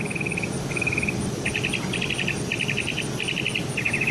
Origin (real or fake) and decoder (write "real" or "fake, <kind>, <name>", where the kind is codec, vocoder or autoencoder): real